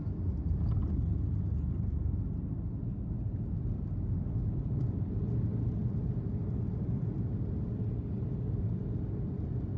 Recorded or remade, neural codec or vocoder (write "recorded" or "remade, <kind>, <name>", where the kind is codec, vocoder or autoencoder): recorded